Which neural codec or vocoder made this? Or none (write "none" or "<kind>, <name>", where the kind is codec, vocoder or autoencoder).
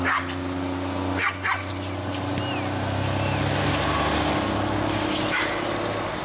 none